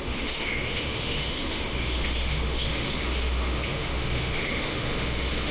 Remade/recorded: remade